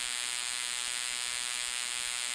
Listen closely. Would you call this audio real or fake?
real